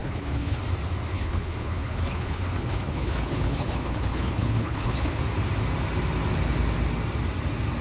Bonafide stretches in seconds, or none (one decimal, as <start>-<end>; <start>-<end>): 0.6-1.1; 5.2-7.8